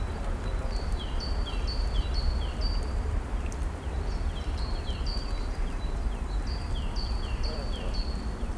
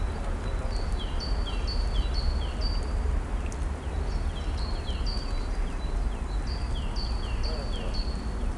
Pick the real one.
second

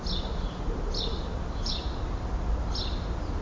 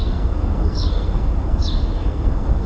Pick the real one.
first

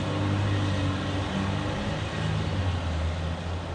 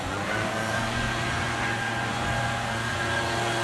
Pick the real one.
first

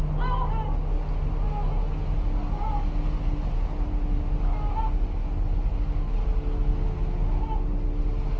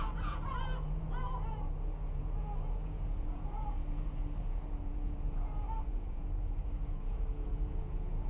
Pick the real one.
first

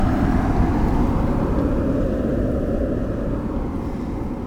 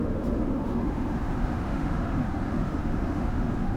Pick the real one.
first